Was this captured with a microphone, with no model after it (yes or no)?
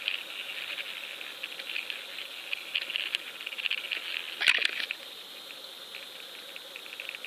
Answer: yes